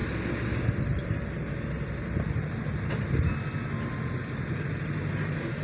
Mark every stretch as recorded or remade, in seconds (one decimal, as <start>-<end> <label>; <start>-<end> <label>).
0.0-5.6 recorded